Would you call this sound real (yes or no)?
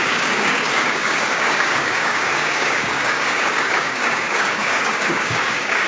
no